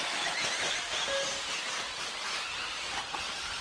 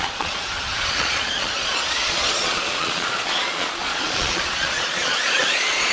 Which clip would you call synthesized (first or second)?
second